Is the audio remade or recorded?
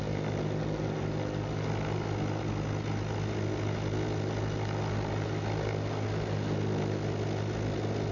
recorded